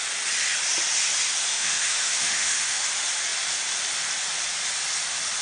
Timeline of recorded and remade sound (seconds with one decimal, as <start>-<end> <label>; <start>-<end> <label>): 0.0-1.5 recorded; 1.5-2.8 remade; 2.8-5.4 recorded